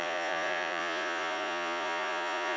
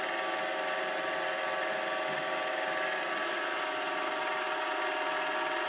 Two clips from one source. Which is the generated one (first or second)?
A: first